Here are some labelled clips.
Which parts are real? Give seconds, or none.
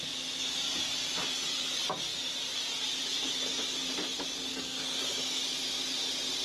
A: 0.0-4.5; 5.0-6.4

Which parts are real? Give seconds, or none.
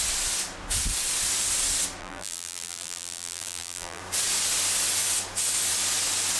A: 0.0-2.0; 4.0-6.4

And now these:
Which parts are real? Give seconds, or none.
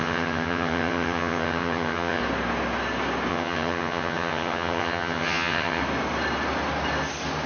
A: 2.2-3.3; 5.8-7.5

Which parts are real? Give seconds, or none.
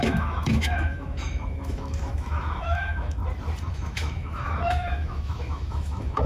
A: 3.2-3.7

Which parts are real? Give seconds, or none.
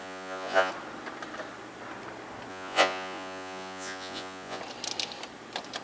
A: 0.7-2.5; 4.6-5.8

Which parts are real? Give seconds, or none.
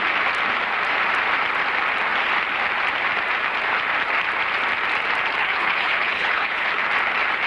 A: 0.0-5.4; 6.7-7.5